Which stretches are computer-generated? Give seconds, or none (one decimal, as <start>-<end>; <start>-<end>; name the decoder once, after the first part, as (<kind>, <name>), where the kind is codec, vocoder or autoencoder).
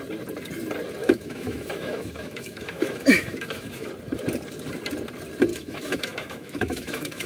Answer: 1.0-3.9 (autoencoder, DAC-VAE); 5.5-7.3